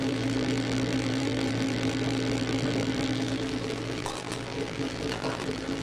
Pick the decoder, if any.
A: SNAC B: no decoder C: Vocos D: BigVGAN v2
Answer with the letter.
D